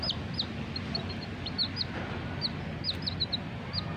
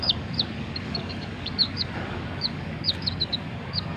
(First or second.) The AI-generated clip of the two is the second